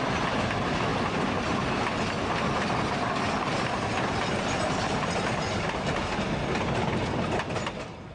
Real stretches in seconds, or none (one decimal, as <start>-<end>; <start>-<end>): 0.0-8.1